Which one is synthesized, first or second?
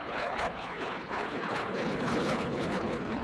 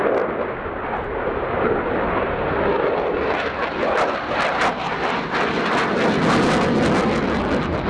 first